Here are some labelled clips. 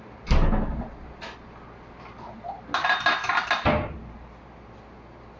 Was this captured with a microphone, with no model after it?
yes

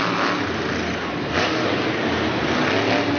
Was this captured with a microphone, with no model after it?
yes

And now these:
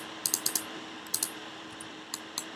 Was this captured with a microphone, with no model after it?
no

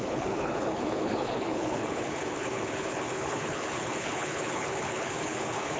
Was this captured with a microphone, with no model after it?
no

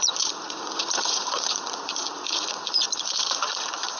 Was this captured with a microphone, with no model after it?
no